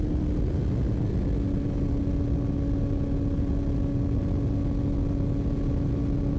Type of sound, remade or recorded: recorded